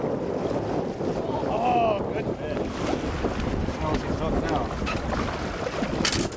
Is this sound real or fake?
real